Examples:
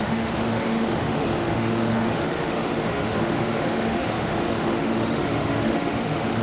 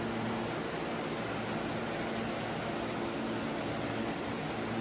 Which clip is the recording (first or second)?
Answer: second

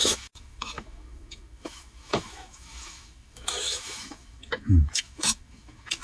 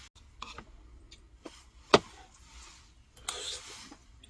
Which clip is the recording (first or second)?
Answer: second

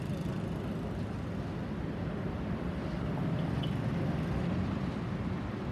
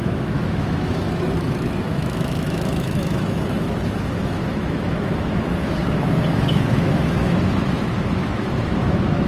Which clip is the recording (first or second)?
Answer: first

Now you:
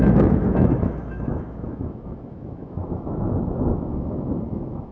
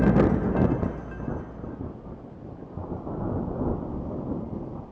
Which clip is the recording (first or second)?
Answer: second